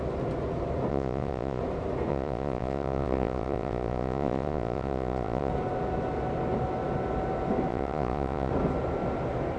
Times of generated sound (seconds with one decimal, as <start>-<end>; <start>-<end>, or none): 0.9-1.6; 2.1-5.5; 7.7-8.5